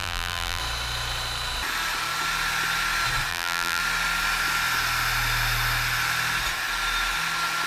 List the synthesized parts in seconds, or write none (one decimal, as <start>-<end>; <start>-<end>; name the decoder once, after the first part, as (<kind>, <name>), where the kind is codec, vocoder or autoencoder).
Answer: 0.0-0.6 (vocoder, BigVGAN v2); 3.3-3.8